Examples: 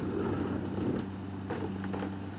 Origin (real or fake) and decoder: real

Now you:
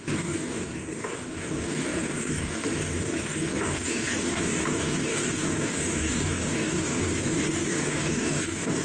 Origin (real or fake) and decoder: fake, codec, DAC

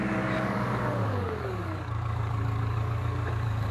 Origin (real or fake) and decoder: fake, codec, DAC